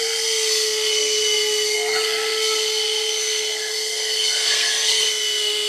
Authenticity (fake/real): fake